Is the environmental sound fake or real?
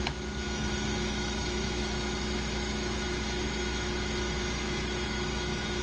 fake